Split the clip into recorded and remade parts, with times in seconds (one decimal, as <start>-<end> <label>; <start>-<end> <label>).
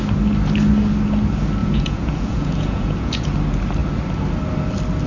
0.0-1.6 recorded; 1.6-3.3 remade; 3.3-5.1 recorded